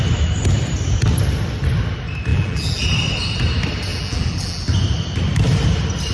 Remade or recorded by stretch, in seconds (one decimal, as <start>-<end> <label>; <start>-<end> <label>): 0.0-2.3 recorded; 2.3-2.8 remade; 2.8-3.9 recorded; 3.9-4.6 remade; 4.6-6.1 recorded